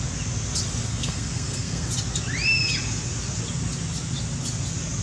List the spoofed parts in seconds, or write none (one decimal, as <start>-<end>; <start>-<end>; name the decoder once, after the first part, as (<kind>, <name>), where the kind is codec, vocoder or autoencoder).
0.9-1.9 (codec, SNAC)